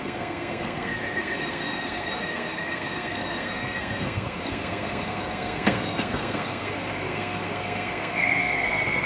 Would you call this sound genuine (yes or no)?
no